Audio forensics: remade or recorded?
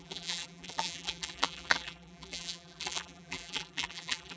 remade